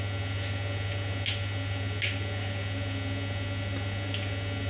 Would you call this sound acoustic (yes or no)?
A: yes